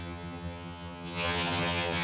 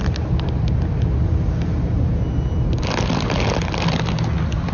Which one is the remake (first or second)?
first